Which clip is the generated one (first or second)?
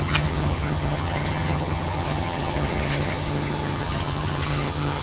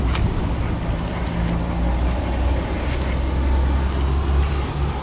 first